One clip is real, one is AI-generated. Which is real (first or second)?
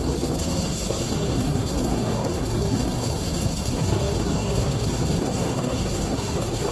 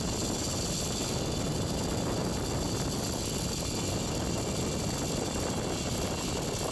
second